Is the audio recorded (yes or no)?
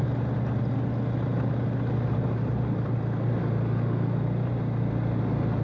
yes